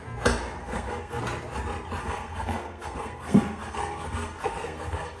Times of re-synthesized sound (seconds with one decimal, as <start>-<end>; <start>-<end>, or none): 0.6-1.2; 2.0-5.2